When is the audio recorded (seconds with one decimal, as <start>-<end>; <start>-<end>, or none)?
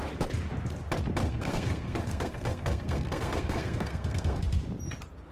0.0-1.2; 4.4-5.3